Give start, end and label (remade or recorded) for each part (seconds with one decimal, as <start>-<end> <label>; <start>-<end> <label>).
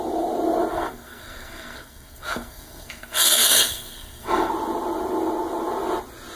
0.0-0.7 recorded; 0.7-4.5 remade; 4.5-6.4 recorded